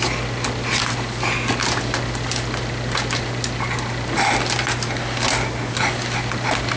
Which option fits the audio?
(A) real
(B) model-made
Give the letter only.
A